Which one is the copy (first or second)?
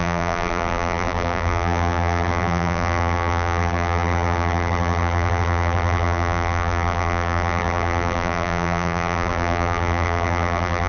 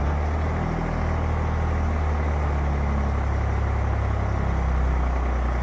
first